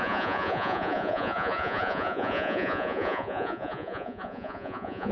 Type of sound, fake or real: fake